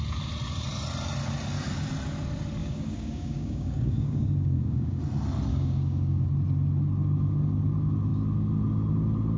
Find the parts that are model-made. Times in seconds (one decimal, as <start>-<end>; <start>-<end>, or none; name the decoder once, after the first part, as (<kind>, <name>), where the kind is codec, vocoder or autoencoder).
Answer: 2.6-5.0 (codec, DAC); 5.5-6.3